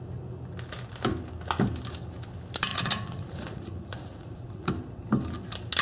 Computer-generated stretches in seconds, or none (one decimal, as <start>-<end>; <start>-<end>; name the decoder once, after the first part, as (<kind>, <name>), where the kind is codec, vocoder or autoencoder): 2.7-4.7 (vocoder, Vocos)